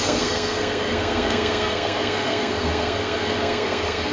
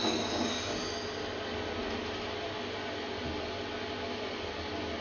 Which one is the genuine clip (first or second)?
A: second